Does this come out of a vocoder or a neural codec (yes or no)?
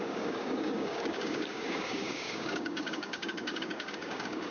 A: yes